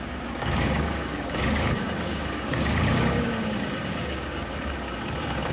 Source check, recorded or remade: remade